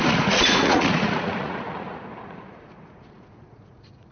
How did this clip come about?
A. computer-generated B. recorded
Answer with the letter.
A